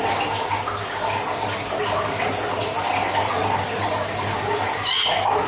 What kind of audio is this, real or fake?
real